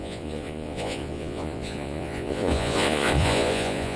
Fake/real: fake